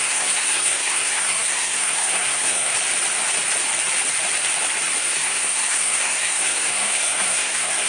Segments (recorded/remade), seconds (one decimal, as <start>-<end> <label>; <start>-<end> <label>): 0.0-2.7 remade; 2.7-5.0 recorded; 5.0-7.9 remade